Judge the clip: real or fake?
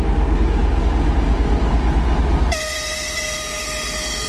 real